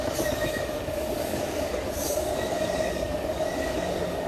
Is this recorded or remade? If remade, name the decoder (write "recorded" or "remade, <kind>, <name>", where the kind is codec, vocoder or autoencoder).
remade, codec, DAC